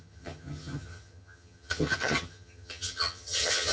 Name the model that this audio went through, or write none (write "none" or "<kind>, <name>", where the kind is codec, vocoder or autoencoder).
vocoder, HiFi-GAN